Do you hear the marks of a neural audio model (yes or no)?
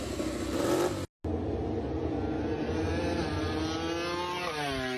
no